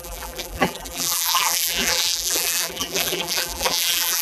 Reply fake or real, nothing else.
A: fake